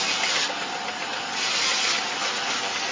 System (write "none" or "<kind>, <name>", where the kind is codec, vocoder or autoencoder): vocoder, BigVGAN v2